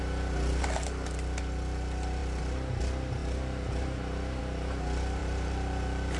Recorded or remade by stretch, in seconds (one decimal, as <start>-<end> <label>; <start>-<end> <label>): 0.0-5.2 recorded; 5.2-6.2 remade